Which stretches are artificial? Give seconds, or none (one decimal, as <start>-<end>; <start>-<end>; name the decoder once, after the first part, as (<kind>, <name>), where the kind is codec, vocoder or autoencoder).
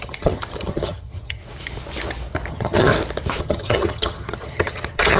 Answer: 0.0-1.4 (vocoder, HiFi-GAN); 2.5-2.9; 3.4-5.2